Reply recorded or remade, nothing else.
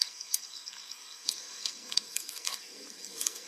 remade